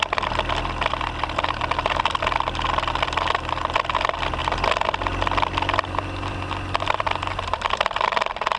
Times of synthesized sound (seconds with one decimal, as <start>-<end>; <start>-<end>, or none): none